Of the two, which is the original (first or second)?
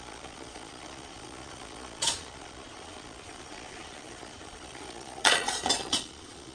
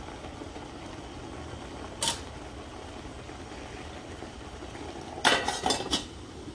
second